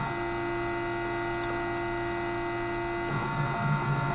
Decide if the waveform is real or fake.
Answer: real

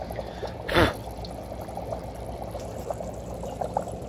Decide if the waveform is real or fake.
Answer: real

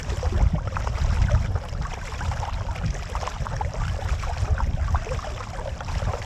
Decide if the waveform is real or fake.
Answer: fake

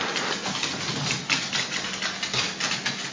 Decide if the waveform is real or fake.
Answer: real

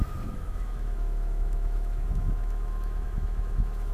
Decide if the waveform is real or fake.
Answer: fake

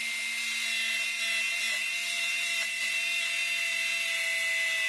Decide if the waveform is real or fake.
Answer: real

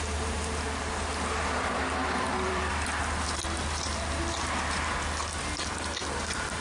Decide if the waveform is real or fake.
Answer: fake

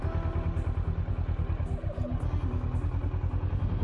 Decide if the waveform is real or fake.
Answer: real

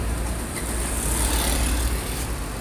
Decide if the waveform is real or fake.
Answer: real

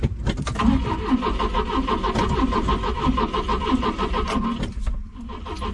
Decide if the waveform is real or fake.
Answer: real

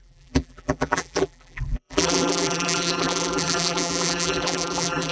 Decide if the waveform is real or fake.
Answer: fake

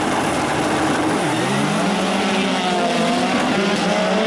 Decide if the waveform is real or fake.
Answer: real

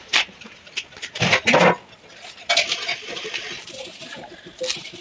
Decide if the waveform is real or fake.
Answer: real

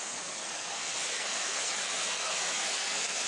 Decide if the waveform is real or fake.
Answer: fake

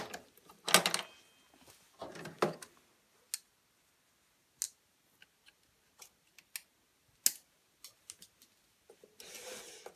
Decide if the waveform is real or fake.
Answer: real